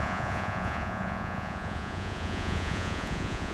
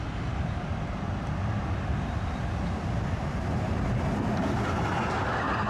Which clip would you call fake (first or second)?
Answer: first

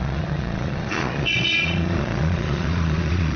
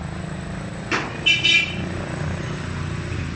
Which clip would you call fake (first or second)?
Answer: first